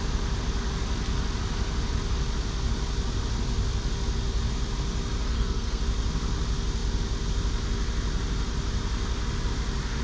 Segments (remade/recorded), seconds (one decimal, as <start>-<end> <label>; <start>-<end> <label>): 0.0-5.3 recorded; 5.3-5.8 remade; 5.8-10.0 recorded

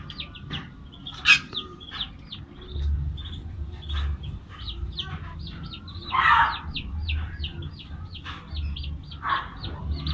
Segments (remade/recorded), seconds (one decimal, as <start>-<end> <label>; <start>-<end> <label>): 0.0-10.1 recorded

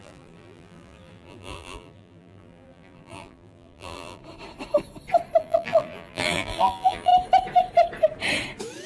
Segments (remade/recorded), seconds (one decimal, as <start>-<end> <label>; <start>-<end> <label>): 0.0-4.2 remade; 4.2-5.4 recorded; 5.4-7.1 remade; 7.1-8.9 recorded

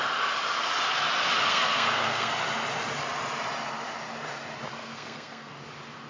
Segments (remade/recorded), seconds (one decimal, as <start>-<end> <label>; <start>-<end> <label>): 0.0-1.5 recorded; 1.5-2.3 remade; 2.3-4.8 recorded; 4.8-5.5 remade; 5.5-6.1 recorded

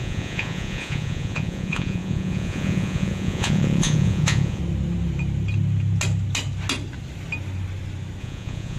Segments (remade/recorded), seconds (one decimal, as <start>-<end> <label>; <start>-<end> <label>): 0.0-4.6 remade; 4.6-8.2 recorded; 8.2-8.8 remade